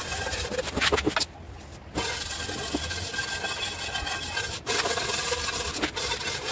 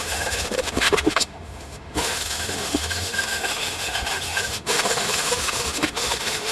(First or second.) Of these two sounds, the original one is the first